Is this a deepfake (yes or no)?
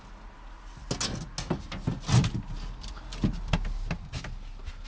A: no